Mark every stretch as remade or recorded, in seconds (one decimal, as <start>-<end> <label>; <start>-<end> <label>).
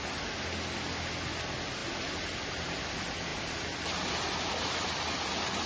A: 0.0-5.7 recorded